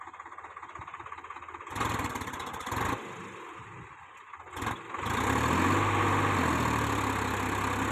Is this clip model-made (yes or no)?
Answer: no